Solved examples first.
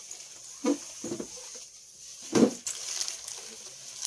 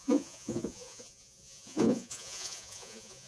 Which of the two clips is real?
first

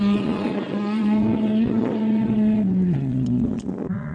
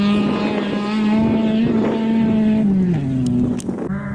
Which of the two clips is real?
second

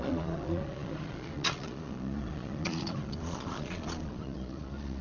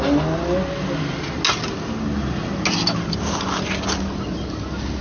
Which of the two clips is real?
second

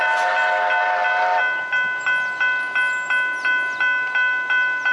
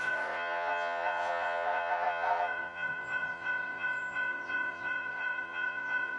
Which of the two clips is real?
first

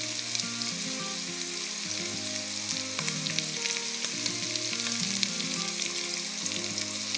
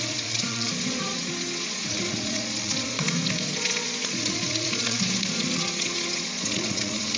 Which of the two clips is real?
first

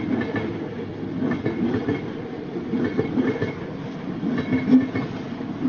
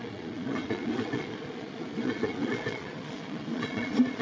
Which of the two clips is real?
first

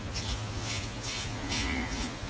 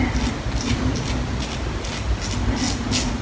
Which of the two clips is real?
second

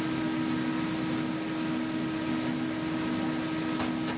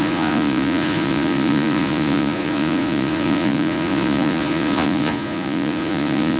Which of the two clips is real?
first